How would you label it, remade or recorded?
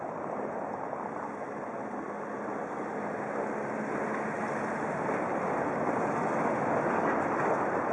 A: recorded